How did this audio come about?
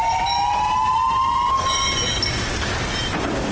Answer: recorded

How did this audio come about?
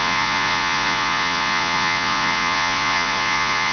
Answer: remade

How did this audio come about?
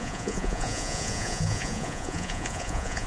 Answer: remade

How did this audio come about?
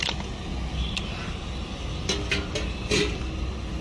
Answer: recorded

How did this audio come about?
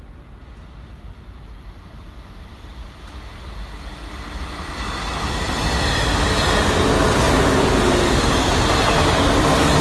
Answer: recorded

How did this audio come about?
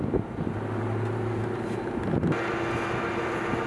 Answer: recorded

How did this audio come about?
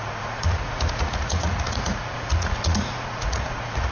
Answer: remade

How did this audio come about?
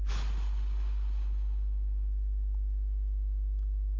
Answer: recorded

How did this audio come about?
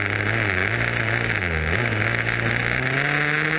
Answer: recorded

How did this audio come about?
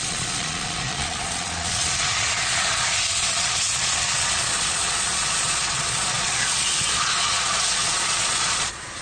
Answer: remade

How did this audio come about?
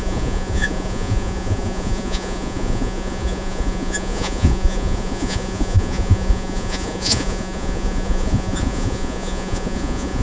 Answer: remade